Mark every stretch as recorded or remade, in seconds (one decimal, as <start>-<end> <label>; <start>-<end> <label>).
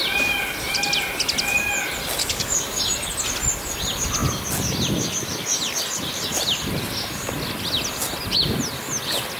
0.0-2.2 recorded; 2.2-2.8 remade; 2.8-9.4 recorded